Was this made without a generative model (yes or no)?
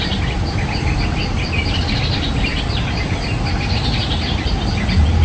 yes